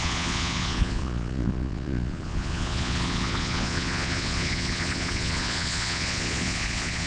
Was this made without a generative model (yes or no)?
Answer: no